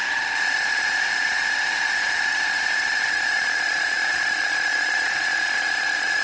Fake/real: fake